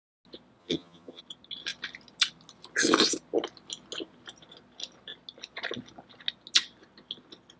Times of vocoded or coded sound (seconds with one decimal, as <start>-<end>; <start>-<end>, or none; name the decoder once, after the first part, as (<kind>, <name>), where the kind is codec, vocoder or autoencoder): 0.6-1.2 (vocoder, HiFi-GAN)